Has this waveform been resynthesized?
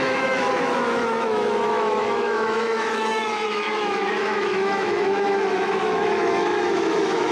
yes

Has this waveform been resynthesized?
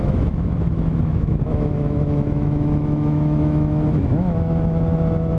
yes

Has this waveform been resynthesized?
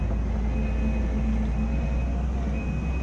no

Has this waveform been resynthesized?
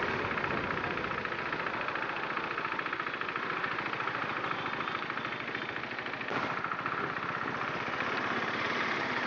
no